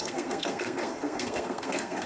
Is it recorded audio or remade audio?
remade